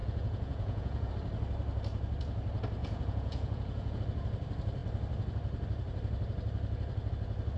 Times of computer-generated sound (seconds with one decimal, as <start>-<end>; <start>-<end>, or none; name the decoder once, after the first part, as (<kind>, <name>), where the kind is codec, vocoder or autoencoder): 0.0-1.1 (vocoder, Vocos); 2.8-4.0